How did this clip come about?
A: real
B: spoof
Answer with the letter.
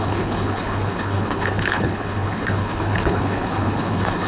B